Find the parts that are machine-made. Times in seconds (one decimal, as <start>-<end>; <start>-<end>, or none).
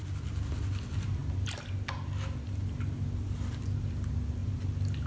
none